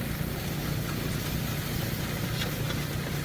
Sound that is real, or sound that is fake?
real